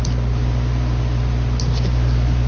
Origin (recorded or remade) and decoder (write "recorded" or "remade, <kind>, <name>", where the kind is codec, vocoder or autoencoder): recorded